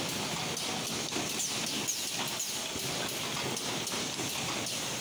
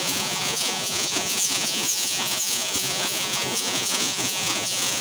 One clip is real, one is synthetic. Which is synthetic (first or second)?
second